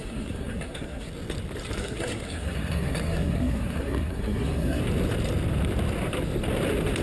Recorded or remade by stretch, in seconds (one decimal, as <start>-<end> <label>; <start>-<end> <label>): 0.0-1.1 remade; 1.1-1.8 recorded; 1.8-4.8 remade; 4.8-7.0 recorded